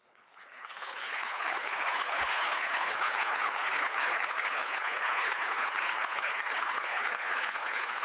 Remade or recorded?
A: remade